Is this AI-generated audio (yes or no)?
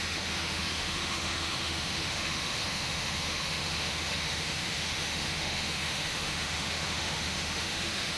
yes